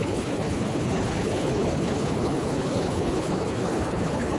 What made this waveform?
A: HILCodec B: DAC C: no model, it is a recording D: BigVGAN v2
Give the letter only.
A